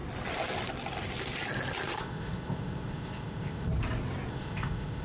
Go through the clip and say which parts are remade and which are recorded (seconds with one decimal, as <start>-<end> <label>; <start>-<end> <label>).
0.0-2.0 recorded; 2.0-3.7 remade; 3.7-4.3 recorded; 4.3-5.0 remade